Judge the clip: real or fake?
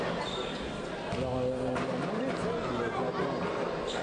real